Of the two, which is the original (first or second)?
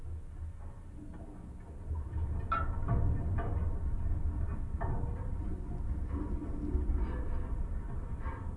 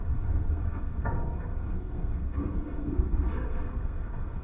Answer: first